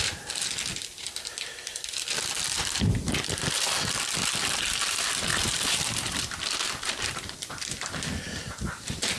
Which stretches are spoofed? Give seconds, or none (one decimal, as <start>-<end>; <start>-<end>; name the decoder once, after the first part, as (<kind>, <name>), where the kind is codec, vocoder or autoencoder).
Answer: 5.3-6.9 (vocoder, BigVGAN v2)